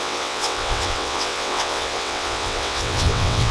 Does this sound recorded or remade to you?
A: remade